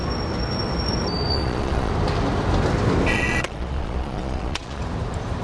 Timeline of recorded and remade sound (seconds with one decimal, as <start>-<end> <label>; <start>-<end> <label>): 0.0-1.3 recorded; 1.3-1.9 remade; 1.9-3.1 recorded; 3.1-4.8 remade; 4.8-5.4 recorded